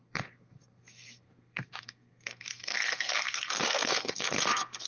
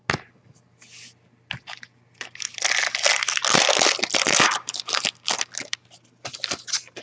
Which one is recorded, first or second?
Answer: second